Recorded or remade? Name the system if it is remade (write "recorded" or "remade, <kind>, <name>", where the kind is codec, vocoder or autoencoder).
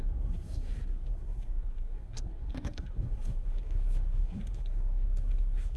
remade, codec, SNAC